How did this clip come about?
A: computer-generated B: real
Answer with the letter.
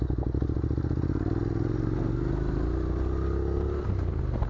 B